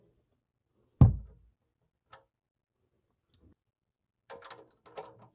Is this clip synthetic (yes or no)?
no